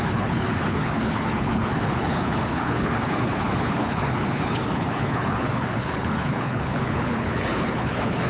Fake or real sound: fake